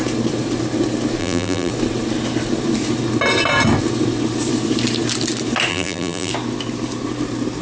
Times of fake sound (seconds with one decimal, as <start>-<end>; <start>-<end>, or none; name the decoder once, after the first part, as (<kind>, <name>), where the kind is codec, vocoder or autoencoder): 1.2-1.7 (vocoder, BigVGAN v2); 5.7-6.3

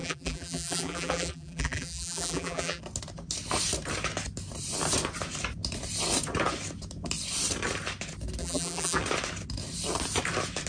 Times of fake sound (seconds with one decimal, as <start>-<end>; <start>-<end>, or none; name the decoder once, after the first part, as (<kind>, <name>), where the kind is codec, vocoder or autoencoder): 0.0-2.8 (vocoder, BigVGAN v2); 8.4-9.0